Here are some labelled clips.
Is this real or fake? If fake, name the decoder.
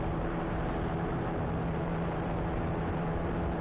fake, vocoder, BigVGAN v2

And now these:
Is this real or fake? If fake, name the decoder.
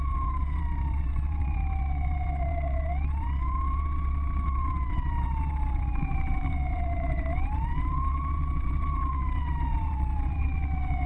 fake, vocoder, WaveNeXt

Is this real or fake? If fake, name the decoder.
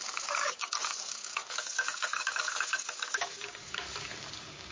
fake, codec, DAC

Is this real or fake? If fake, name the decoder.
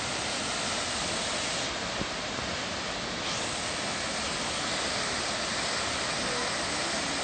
real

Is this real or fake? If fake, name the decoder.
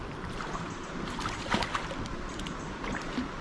real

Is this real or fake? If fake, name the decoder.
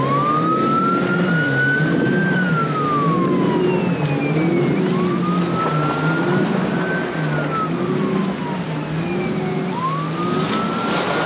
real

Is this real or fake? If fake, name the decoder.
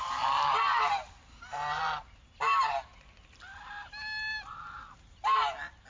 real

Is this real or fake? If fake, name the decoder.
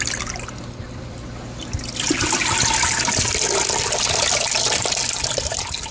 real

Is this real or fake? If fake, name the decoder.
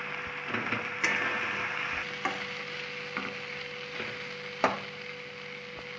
real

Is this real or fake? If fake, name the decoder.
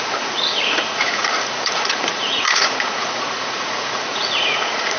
fake, vocoder, Vocos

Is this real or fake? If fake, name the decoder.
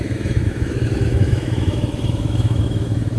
fake, autoencoder, DAC-VAE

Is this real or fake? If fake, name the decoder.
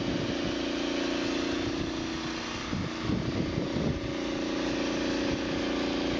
real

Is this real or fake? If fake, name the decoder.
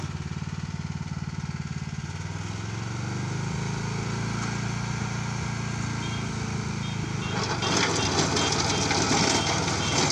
real